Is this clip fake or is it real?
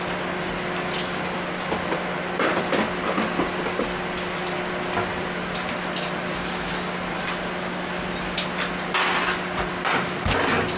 real